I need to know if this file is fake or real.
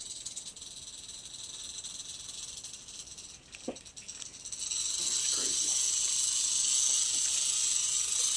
real